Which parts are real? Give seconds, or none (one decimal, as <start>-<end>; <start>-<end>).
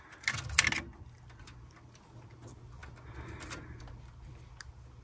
0.0-5.0